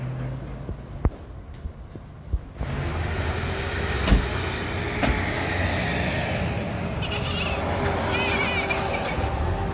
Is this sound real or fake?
real